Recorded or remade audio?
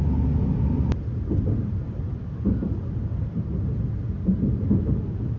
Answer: recorded